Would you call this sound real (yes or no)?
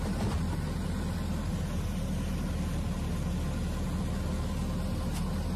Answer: yes